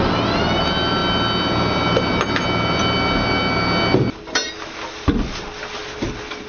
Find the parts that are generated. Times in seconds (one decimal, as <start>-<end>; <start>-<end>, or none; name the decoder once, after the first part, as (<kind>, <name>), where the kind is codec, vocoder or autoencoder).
none